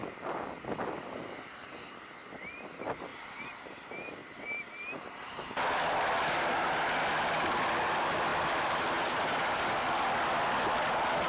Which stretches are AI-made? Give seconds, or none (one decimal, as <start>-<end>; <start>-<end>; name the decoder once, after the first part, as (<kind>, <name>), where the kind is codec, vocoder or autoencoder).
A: 3.1-3.6 (vocoder, BigVGAN v2); 4.2-4.7; 8.3-10.0